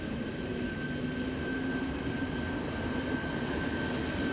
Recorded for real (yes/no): yes